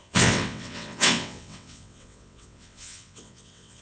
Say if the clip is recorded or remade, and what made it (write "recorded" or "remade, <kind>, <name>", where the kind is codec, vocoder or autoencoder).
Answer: remade, vocoder, WaveNeXt